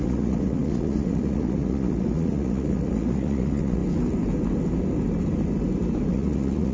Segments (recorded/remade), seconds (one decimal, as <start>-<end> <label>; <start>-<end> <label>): 0.0-3.8 remade; 3.8-6.1 recorded; 6.1-6.7 remade